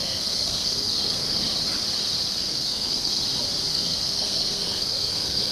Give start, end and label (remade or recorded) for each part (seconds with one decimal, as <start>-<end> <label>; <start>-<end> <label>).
0.0-1.4 remade; 1.4-2.3 recorded; 2.3-3.2 remade; 3.2-3.7 recorded; 3.7-5.5 remade